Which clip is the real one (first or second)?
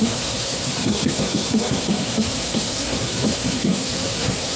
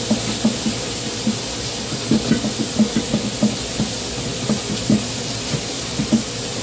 second